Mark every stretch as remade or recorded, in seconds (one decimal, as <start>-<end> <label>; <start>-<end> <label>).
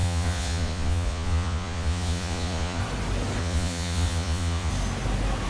0.0-2.8 remade; 2.8-3.4 recorded; 3.4-4.7 remade; 4.7-5.5 recorded